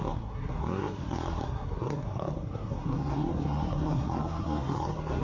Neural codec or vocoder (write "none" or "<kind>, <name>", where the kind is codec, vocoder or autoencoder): codec, SNAC